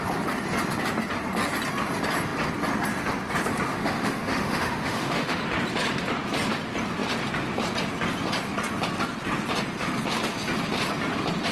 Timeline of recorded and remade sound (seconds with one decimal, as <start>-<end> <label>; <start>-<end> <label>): 0.0-3.7 recorded; 3.7-5.4 remade; 5.4-11.5 recorded